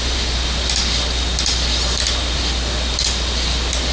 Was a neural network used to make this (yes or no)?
no